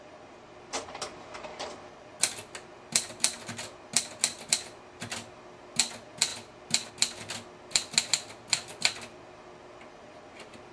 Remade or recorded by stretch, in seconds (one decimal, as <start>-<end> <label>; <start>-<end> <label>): 0.0-10.7 recorded